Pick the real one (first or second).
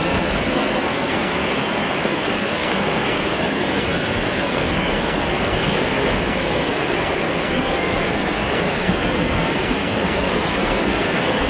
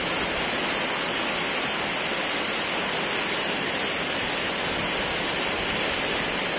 second